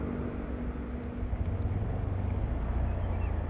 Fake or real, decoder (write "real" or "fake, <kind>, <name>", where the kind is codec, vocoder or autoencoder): real